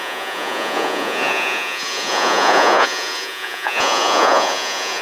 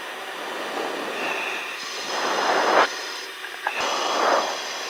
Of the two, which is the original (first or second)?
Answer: second